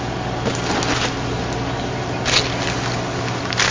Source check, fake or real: real